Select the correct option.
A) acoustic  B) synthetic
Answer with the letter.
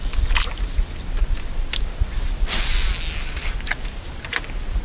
A